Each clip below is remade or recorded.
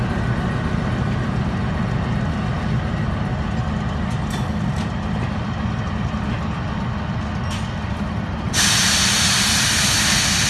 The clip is recorded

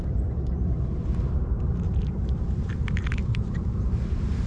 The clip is remade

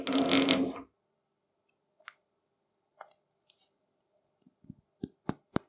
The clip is recorded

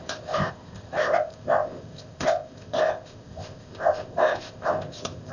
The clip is remade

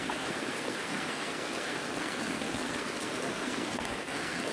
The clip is remade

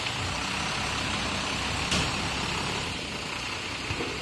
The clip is recorded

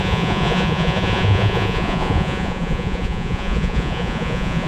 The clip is remade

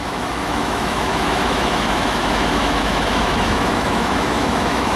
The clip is remade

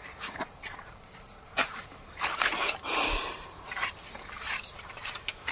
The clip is remade